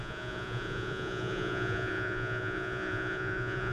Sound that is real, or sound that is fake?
fake